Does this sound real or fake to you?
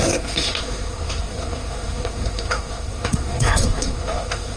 fake